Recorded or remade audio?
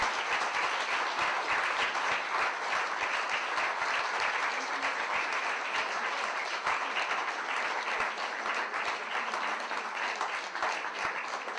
recorded